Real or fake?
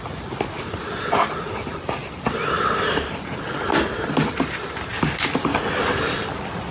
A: real